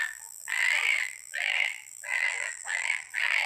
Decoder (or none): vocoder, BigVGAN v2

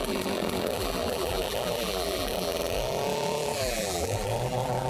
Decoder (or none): vocoder, BigVGAN v2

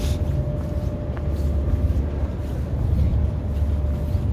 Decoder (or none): none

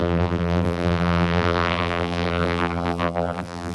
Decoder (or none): vocoder, BigVGAN v2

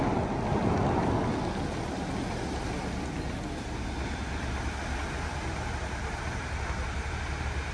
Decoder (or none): none